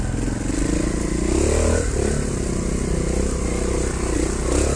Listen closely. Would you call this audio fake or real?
real